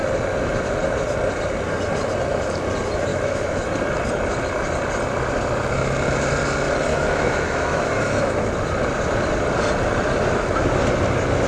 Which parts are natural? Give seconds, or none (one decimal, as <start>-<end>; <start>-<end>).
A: 0.0-3.1; 3.6-6.9; 8.5-11.5